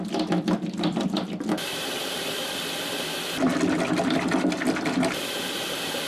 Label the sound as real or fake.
fake